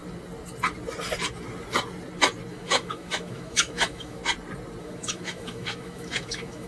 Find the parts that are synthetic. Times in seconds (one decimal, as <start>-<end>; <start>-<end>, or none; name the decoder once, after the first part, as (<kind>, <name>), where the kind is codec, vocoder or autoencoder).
2.5-4.2 (autoencoder, DAC-VAE); 4.8-6.7